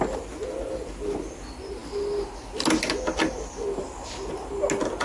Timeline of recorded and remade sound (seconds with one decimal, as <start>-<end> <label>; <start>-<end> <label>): 0.0-5.0 recorded